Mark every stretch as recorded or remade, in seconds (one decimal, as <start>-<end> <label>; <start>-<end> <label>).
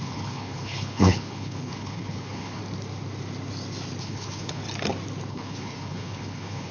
0.0-2.6 remade; 2.6-4.0 recorded; 4.0-4.6 remade; 4.6-5.3 recorded; 5.3-6.7 remade